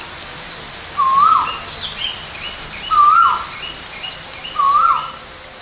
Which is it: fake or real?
real